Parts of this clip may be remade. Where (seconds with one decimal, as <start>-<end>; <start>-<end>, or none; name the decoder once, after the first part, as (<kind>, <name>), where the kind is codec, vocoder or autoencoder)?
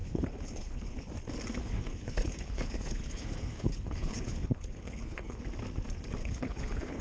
0.0-1.0 (codec, HILCodec); 1.6-5.4; 6.2-7.0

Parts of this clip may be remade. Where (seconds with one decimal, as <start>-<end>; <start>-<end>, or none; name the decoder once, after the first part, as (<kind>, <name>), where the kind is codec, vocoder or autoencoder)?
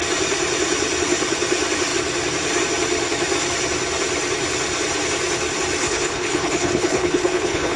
5.8-7.8 (codec, HILCodec)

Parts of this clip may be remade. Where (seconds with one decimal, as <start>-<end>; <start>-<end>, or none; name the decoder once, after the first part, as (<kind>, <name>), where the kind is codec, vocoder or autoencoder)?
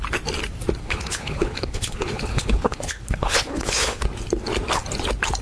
0.8-4.0 (codec, HILCodec)